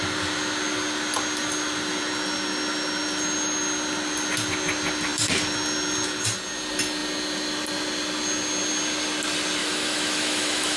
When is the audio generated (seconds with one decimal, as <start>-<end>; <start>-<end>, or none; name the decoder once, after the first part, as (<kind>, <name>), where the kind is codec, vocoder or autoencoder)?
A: 9.6-10.8 (autoencoder, DAC-VAE)